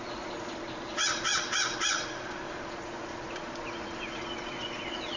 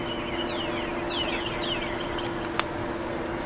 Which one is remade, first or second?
first